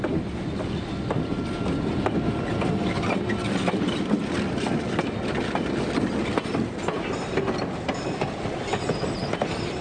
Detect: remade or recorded recorded